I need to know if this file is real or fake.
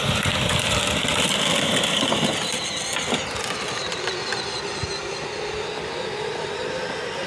real